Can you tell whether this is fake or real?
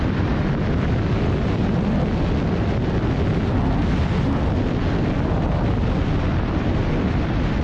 real